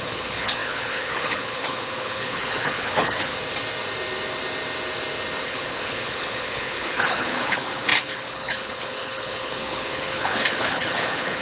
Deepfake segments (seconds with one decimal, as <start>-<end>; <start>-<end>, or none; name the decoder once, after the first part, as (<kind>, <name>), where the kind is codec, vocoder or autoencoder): 0.0-3.3 (codec, HILCodec); 5.4-11.4